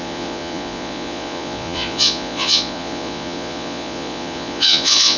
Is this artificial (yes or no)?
yes